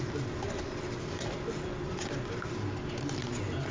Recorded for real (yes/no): yes